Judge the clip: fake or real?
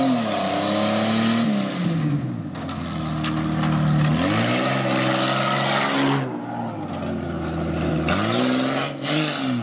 real